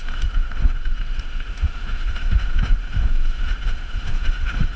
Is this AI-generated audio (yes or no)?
yes